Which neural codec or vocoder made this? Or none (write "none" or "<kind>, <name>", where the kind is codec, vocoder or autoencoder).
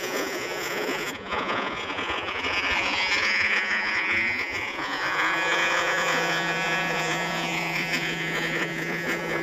vocoder, Vocos